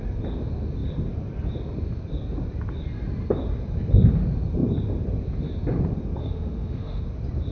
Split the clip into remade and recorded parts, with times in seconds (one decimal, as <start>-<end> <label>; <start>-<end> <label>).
0.0-6.2 recorded; 6.2-7.0 remade; 7.0-7.5 recorded